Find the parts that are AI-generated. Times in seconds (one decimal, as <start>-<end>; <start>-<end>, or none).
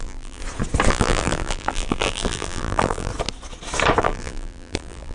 0.0-0.4; 0.9-3.1; 4.0-5.1